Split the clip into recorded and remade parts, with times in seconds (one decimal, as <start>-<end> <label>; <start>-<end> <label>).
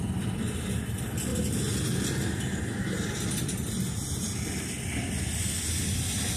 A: 0.0-6.4 recorded